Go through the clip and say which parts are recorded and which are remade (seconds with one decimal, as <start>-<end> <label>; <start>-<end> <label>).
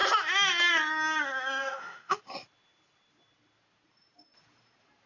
0.0-1.6 recorded; 1.6-2.2 remade; 2.2-5.1 recorded